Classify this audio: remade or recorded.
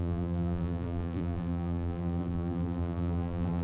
remade